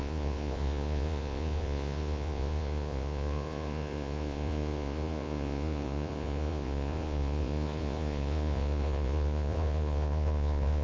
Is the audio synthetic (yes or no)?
yes